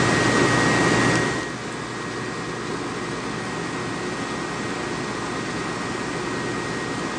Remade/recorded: recorded